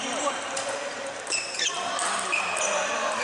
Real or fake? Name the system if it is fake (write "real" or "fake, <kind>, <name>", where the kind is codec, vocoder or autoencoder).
real